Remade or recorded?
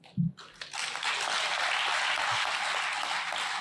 recorded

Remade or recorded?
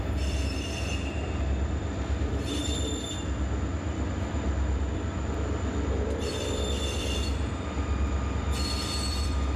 remade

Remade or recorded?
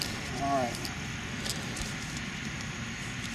recorded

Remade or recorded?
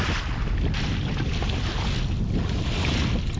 recorded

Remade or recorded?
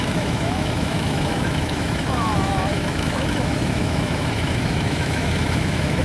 remade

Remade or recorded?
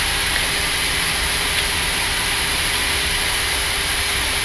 recorded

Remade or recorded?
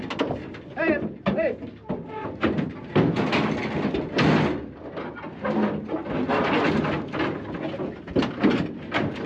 recorded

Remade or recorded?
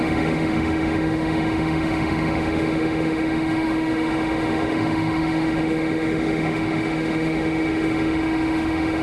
remade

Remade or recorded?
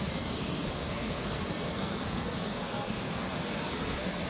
remade